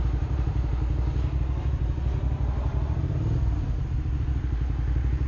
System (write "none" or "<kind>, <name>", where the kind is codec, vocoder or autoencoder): vocoder, BigVGAN v2